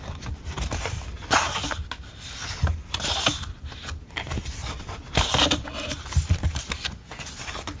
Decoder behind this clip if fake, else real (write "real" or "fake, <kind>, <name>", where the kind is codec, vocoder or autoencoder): real